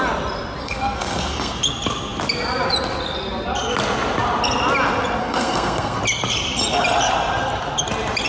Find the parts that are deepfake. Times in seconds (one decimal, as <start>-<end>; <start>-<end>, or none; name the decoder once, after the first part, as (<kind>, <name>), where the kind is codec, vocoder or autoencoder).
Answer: 0.6-1.6 (codec, SNAC); 5.2-6.0